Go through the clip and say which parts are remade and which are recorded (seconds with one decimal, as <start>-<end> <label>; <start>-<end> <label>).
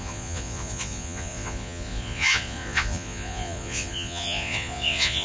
0.0-5.2 remade